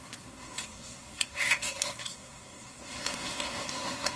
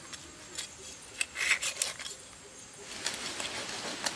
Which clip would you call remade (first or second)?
first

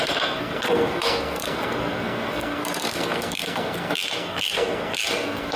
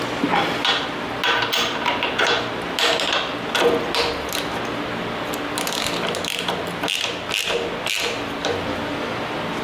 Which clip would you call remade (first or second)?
first